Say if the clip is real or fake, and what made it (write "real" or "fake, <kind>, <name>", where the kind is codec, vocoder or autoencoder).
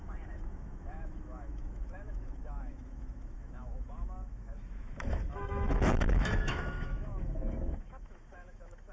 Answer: fake, autoencoder, DAC-VAE